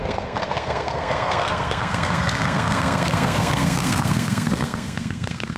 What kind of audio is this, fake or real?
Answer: fake